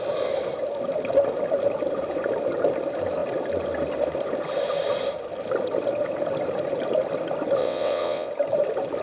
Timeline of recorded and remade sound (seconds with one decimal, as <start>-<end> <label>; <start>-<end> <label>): 0.0-7.6 recorded; 7.6-8.3 remade; 8.3-9.0 recorded